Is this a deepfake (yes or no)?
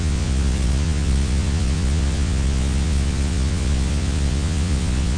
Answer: yes